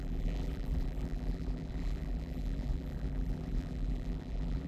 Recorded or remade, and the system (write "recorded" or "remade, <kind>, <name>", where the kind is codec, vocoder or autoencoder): remade, vocoder, BigVGAN v2